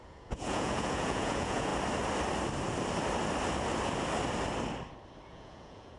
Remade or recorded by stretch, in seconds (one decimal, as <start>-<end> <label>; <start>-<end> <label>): 0.0-1.7 remade; 1.7-5.3 recorded; 5.3-6.0 remade